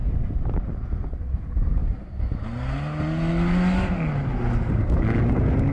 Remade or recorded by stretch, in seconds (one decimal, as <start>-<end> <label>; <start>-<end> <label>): 0.0-1.8 remade; 1.8-5.2 recorded; 5.2-5.7 remade